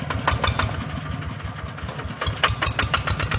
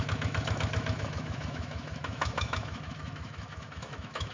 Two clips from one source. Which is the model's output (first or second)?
second